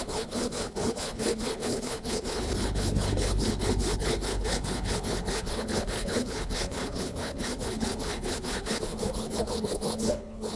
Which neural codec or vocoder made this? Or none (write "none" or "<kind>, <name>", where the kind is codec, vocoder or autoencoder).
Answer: codec, HILCodec